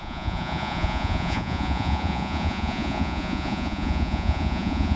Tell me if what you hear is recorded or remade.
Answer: remade